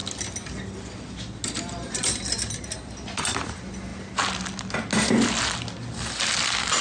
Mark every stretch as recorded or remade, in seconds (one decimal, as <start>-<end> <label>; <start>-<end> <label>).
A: 0.0-6.8 recorded